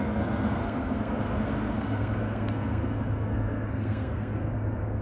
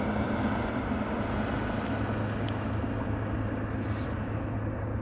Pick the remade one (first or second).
first